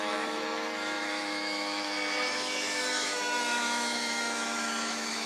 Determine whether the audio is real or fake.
fake